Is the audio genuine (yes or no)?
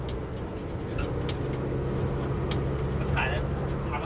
yes